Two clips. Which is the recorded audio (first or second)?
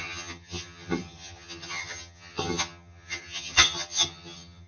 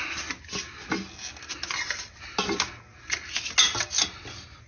second